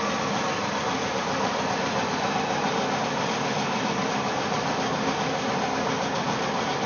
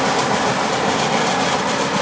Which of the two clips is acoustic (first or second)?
second